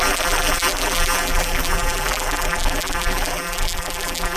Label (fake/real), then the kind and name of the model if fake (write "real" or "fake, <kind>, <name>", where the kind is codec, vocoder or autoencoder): fake, vocoder, BigVGAN v2